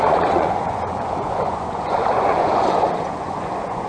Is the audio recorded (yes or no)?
no